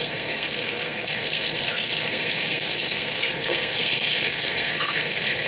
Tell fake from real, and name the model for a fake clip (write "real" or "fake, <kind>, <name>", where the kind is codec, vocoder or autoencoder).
fake, codec, SNAC